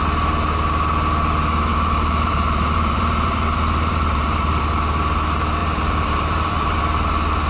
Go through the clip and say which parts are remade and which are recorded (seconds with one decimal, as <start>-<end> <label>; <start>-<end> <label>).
0.0-1.7 recorded; 1.7-4.6 remade; 4.6-5.6 recorded; 5.6-6.8 remade; 6.8-7.5 recorded